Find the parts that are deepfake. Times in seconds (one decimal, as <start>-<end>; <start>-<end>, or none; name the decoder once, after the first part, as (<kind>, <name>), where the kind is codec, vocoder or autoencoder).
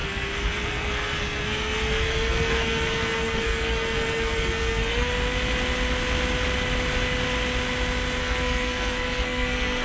0.0-5.1 (codec, SNAC); 8.2-9.8